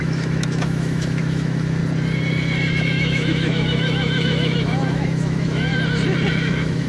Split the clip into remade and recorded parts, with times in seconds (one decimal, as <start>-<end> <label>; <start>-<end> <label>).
0.0-1.8 remade; 1.8-2.8 recorded; 2.8-5.7 remade; 5.7-6.3 recorded; 6.3-6.9 remade